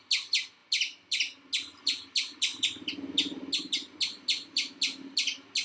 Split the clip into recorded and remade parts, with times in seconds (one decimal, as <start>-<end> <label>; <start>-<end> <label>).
0.0-5.6 recorded